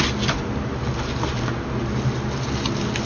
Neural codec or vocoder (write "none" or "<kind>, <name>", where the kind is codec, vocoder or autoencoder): none